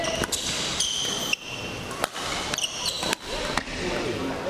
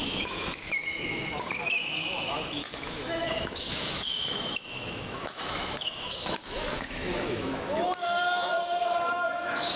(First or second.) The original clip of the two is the first